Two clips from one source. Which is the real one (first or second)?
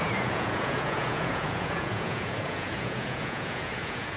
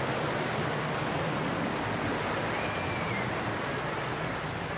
second